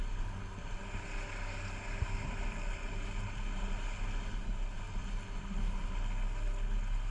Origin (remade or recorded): recorded